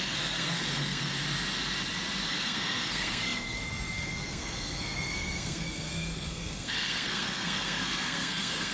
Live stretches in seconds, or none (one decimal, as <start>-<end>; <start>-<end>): 1.1-2.3